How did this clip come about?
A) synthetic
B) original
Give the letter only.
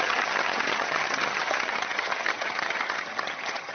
A